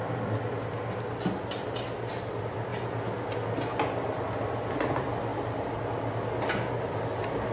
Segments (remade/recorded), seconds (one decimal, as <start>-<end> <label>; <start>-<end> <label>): 0.0-7.5 recorded